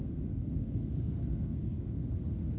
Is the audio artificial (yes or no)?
yes